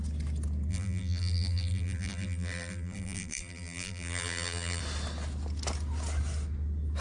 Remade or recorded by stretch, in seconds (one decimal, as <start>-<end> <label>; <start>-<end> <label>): 0.0-0.7 recorded; 0.7-4.8 remade; 4.8-7.0 recorded